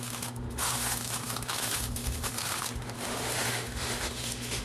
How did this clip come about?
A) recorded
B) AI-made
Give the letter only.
B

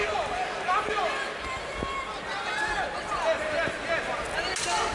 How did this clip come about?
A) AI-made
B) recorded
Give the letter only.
B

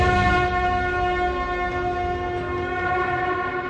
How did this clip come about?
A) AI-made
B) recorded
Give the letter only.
B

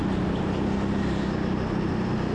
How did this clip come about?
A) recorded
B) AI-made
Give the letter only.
A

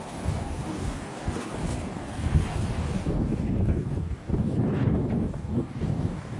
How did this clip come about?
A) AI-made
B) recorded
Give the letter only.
A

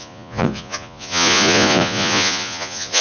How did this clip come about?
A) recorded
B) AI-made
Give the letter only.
B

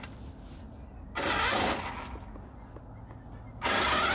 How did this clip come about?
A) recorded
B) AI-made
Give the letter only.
A